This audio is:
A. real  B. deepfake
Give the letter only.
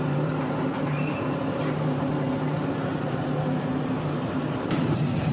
B